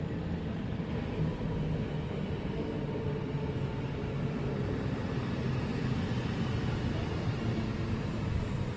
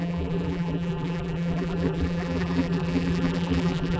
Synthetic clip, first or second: second